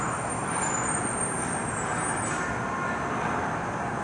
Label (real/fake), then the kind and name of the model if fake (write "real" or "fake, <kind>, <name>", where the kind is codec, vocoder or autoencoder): real